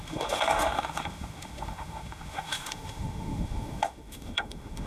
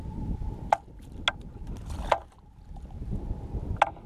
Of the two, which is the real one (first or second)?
second